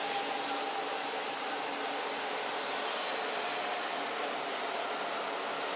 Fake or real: real